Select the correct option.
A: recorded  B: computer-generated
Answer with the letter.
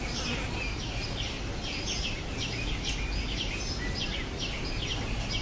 A